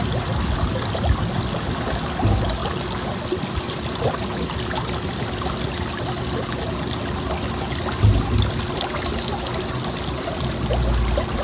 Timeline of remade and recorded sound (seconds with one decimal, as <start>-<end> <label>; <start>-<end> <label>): 0.0-11.4 recorded